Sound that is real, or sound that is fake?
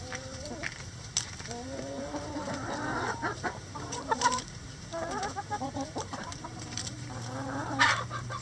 fake